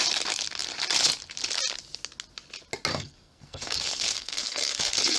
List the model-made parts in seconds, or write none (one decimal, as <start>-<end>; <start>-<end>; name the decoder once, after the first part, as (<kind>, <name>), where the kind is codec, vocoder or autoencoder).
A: 2.9-5.2 (codec, SNAC)